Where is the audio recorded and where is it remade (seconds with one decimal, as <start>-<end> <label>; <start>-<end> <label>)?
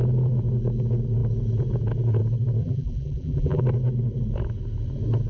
0.0-2.6 recorded; 2.6-3.6 remade; 3.6-5.3 recorded